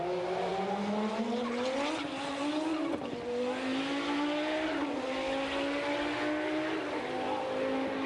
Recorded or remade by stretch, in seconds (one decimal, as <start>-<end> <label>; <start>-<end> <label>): 0.0-8.1 recorded